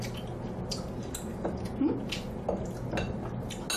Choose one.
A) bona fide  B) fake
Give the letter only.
A